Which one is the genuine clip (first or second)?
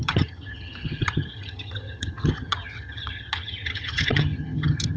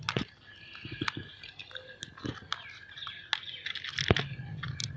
second